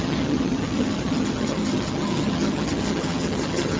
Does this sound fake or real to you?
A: fake